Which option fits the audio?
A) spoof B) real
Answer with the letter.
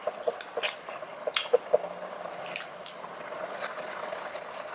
B